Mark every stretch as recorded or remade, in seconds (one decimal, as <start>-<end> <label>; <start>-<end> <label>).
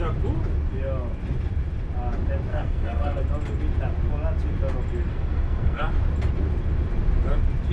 0.0-2.5 recorded; 2.5-3.2 remade; 3.2-5.1 recorded; 5.1-5.8 remade; 5.8-7.7 recorded